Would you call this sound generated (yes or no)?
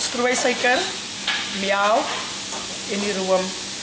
no